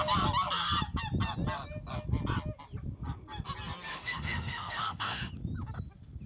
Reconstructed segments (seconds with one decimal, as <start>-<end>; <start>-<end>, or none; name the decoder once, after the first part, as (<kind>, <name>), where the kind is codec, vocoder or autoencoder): 3.9-5.3 (autoencoder, DAC-VAE)